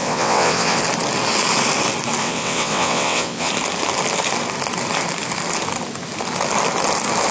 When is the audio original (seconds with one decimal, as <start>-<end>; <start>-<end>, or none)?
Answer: 0.8-2.2; 3.5-7.3

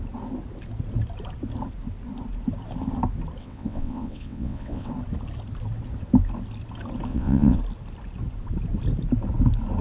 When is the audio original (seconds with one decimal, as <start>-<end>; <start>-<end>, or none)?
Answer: 0.0-3.4; 4.9-7.1; 7.6-9.8

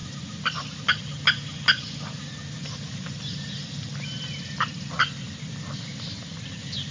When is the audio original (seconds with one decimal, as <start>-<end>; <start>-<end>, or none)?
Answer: 0.0-6.9

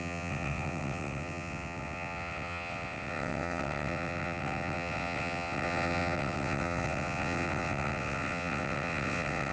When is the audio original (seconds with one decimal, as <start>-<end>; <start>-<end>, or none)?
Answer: none

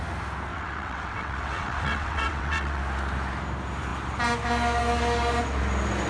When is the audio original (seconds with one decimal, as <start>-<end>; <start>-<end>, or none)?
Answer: 0.0-0.5; 2.8-6.1

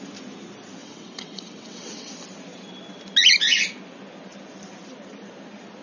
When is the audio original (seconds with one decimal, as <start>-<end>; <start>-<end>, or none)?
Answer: 0.0-0.8; 2.1-5.8

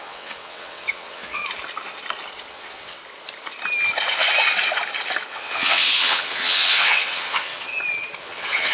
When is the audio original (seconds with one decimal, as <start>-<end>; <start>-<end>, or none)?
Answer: 1.4-2.5; 3.0-5.3; 7.7-8.2